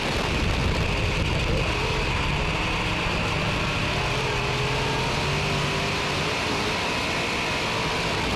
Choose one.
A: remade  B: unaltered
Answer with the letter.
B